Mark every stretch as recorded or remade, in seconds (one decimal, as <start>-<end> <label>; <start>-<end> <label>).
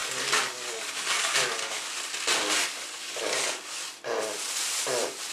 0.0-1.9 remade; 1.9-2.6 recorded; 2.6-4.0 remade; 4.0-5.3 recorded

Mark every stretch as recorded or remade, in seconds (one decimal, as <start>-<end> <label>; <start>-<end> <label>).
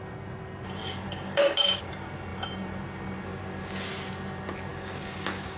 0.0-0.8 recorded; 0.8-1.9 remade; 1.9-4.7 recorded; 4.7-5.6 remade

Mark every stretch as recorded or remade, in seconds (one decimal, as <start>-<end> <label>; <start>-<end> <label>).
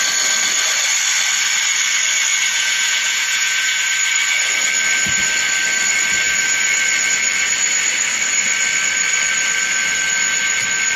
0.0-2.5 recorded; 2.5-3.8 remade; 3.8-11.0 recorded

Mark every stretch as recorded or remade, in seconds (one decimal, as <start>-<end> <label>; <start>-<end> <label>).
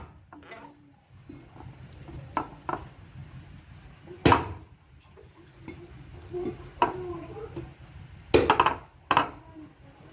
0.0-10.1 recorded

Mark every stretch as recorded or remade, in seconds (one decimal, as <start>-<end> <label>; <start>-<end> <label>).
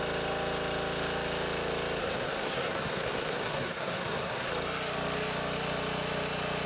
0.0-2.0 recorded; 2.0-4.5 remade; 4.5-6.7 recorded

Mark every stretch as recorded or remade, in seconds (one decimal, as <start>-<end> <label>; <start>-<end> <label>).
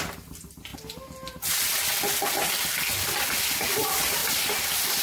0.0-5.0 recorded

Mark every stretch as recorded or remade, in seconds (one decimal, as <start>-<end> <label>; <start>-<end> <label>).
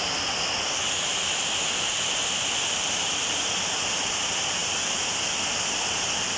0.0-6.4 recorded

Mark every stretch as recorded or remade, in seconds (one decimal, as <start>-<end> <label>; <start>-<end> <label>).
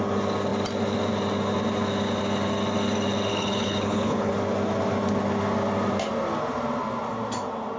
0.0-3.3 recorded; 3.3-4.3 remade; 4.3-7.8 recorded